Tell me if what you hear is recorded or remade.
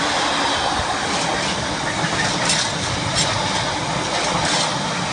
recorded